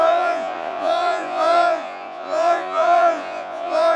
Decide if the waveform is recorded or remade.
remade